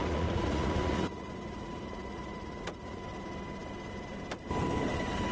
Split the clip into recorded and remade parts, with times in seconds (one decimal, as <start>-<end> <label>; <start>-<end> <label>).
0.0-3.0 remade; 3.0-5.3 recorded